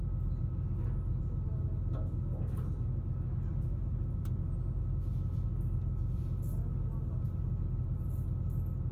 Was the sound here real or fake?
real